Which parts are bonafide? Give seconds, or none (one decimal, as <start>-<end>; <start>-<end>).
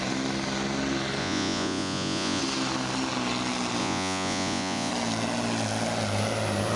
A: 0.0-1.2; 2.4-3.8; 4.9-6.8